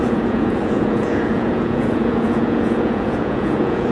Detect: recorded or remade remade